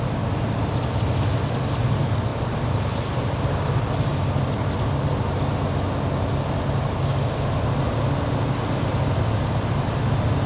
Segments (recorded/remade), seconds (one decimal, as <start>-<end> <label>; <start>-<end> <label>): 0.0-10.5 recorded